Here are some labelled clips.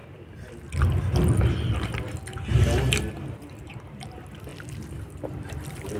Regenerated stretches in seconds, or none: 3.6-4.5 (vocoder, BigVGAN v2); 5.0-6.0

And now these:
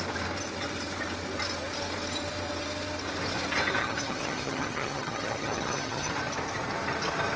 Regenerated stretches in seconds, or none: 3.8-6.1 (vocoder, HiFi-GAN)